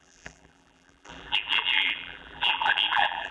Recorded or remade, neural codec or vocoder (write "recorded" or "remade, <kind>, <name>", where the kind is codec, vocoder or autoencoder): remade, vocoder, BigVGAN v2